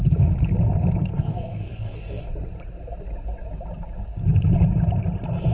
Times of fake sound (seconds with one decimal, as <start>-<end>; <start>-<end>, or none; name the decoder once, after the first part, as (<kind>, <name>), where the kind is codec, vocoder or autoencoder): 1.1-2.2 (codec, SNAC)